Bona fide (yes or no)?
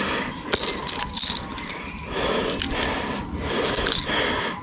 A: yes